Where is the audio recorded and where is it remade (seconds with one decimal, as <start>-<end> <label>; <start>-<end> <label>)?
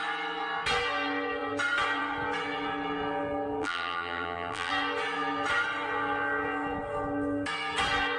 0.0-3.6 recorded; 3.6-4.7 remade; 4.7-8.2 recorded